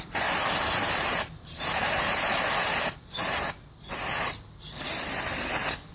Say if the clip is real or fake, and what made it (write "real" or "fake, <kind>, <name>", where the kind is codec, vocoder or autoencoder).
real